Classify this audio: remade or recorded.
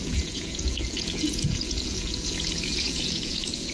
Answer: remade